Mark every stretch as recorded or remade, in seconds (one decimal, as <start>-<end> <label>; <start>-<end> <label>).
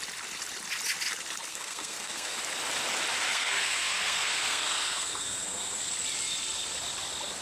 0.0-1.5 recorded; 1.5-2.4 remade; 2.4-3.3 recorded; 3.3-5.9 remade; 5.9-7.4 recorded